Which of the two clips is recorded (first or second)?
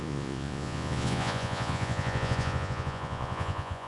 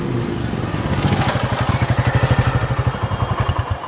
second